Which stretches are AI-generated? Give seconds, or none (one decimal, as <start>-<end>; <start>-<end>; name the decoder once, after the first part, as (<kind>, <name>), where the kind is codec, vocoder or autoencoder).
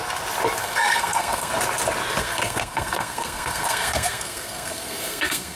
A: 0.6-1.5 (codec, SNAC); 2.2-5.6